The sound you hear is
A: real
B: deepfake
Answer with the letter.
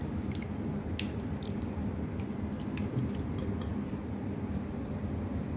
A